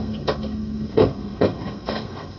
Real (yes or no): no